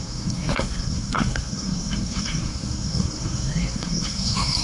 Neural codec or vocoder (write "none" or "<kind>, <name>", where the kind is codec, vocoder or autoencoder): codec, SNAC